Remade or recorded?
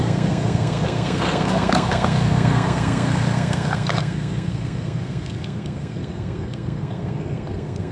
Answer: remade